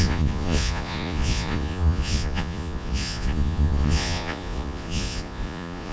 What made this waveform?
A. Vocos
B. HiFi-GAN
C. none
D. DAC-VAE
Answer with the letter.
A